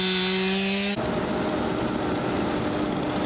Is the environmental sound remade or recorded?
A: recorded